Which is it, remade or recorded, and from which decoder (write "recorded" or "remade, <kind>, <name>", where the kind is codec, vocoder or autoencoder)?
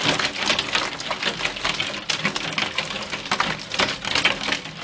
recorded